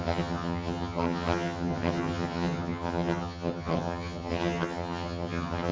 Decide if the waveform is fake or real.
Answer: fake